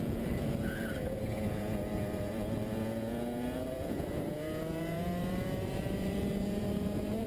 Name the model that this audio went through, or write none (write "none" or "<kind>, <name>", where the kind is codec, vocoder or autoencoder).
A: vocoder, Vocos